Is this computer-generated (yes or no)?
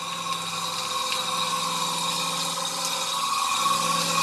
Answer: no